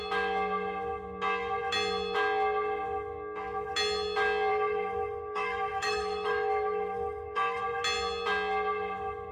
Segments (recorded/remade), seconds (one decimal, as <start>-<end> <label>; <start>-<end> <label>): 0.0-4.5 recorded; 4.5-7.6 remade; 7.6-9.3 recorded